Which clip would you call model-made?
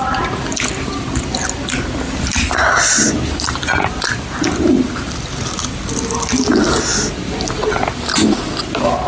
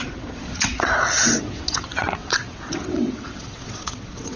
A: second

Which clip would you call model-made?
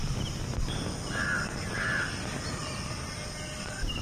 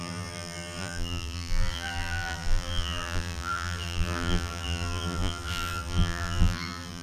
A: second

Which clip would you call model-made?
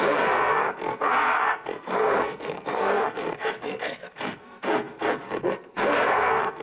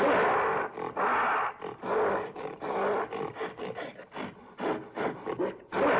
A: first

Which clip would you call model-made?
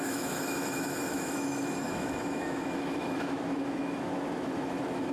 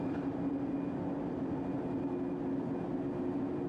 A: first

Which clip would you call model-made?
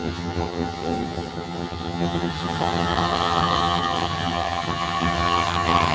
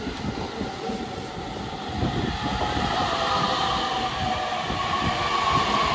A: first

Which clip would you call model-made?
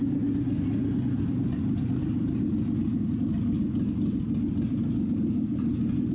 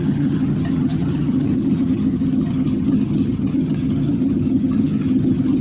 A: second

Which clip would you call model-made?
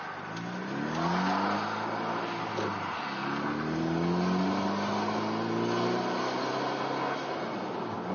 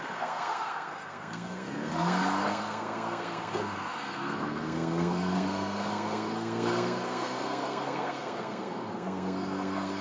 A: second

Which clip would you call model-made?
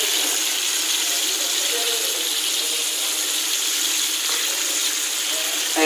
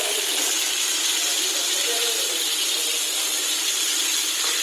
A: second